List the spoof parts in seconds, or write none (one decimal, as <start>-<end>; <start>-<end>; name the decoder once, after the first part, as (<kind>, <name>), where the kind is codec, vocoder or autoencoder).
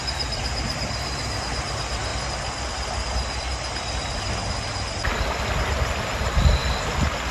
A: none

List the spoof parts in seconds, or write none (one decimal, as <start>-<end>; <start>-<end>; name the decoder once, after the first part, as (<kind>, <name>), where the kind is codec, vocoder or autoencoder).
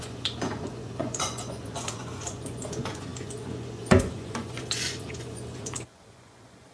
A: 0.0-6.7 (vocoder, Vocos)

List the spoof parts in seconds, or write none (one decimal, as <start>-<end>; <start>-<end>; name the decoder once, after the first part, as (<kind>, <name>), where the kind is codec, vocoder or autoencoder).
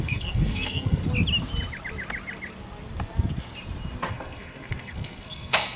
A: 0.0-1.0 (codec, SNAC); 4.1-5.8